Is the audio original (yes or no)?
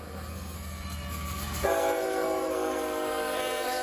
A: no